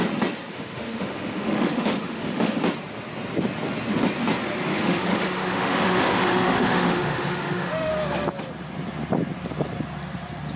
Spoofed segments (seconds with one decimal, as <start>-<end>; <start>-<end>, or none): 0.5-2.6; 4.7-7.9